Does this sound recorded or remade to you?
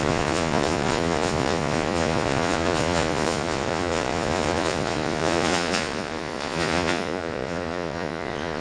remade